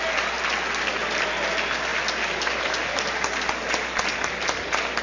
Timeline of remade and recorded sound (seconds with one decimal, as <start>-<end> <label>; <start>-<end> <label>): 0.0-5.0 recorded